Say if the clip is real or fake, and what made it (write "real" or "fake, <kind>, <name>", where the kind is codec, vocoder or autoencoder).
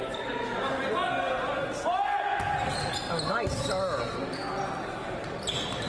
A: real